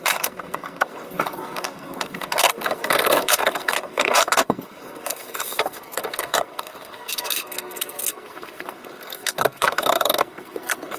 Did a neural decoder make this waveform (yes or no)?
yes